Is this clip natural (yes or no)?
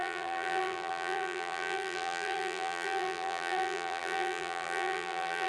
no